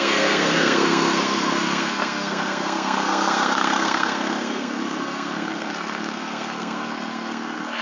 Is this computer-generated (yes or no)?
yes